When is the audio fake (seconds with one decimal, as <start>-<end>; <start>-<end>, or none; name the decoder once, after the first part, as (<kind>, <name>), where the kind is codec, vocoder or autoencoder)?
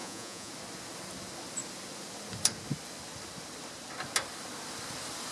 0.0-0.5 (vocoder, Vocos)